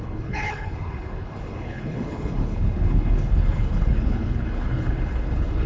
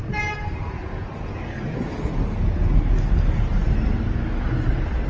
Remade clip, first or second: first